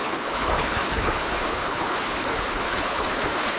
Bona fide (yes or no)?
no